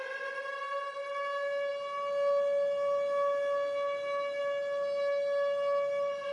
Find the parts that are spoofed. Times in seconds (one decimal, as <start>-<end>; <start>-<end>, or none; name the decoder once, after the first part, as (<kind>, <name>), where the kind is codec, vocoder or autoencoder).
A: none